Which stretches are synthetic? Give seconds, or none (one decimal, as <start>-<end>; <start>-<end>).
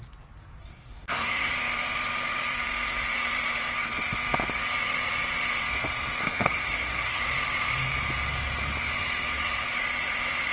0.6-1.5; 6.2-7.2